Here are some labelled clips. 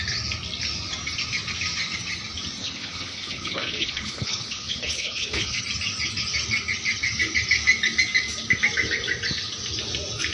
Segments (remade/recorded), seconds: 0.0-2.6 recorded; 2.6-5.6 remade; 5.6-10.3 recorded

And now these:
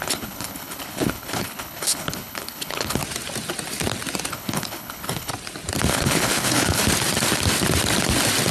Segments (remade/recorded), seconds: 0.0-3.0 remade; 3.0-4.3 recorded; 4.3-5.3 remade; 5.3-5.9 recorded; 5.9-6.8 remade; 6.8-8.5 recorded